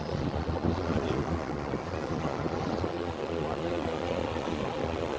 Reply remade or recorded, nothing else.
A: remade